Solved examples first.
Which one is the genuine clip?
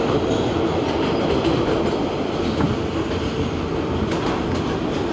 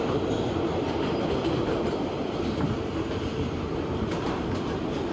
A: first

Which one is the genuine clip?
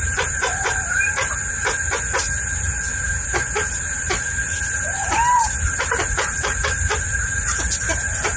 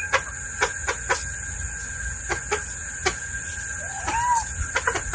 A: second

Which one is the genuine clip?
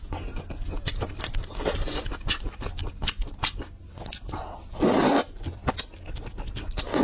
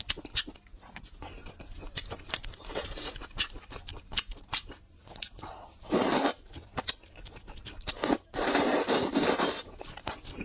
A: first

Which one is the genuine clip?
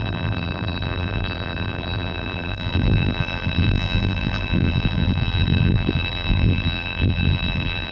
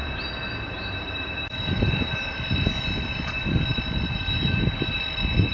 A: second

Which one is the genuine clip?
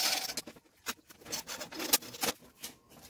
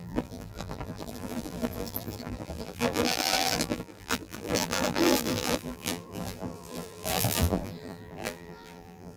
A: first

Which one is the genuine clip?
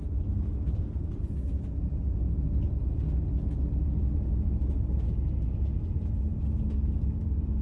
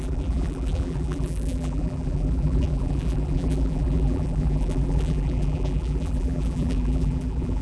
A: first